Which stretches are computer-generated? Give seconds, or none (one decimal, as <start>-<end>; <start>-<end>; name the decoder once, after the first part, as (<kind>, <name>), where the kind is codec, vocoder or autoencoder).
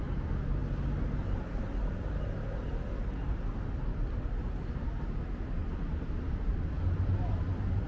none